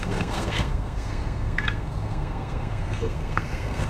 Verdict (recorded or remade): remade